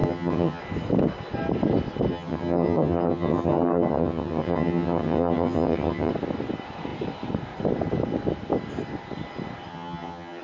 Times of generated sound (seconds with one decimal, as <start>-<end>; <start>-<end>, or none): 0.0-0.6; 2.1-6.1; 9.7-10.4